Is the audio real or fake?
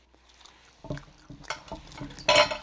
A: real